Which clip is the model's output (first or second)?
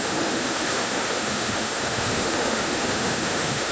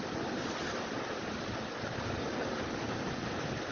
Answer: first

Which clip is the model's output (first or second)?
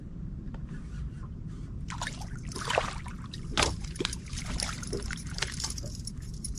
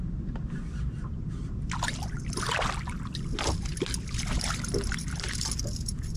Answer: first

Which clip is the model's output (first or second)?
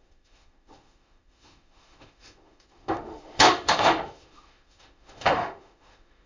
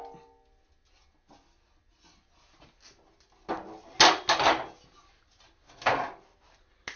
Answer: first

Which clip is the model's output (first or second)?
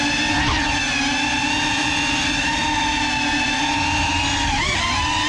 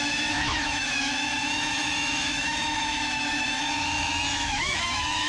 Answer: second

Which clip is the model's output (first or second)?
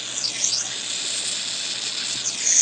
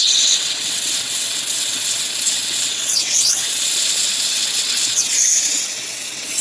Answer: second